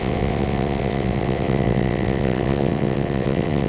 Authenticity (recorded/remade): remade